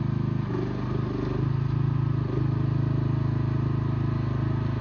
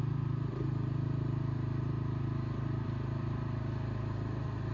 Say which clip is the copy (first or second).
second